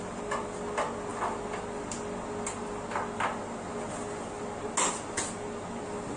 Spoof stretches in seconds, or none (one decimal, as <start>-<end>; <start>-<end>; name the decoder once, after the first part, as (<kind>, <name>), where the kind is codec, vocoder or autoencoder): none